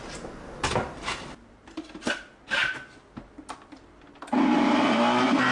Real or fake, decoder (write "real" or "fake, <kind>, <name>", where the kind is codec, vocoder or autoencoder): real